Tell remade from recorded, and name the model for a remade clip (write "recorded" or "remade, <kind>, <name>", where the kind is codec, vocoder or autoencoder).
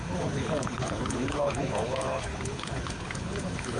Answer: remade, codec, HILCodec